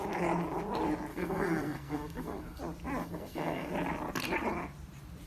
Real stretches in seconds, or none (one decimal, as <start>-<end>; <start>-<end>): 0.0-1.1; 2.6-3.0; 3.7-5.3